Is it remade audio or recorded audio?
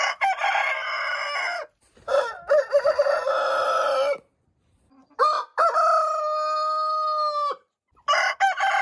recorded